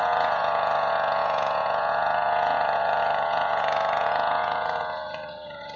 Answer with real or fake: fake